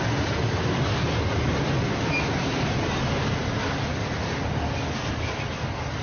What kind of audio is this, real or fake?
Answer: real